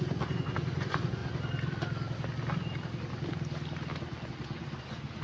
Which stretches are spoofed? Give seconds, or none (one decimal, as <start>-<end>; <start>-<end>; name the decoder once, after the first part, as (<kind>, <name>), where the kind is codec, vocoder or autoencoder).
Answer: 0.0-1.2 (vocoder, Vocos); 4.3-5.2